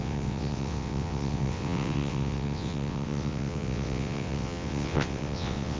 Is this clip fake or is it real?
fake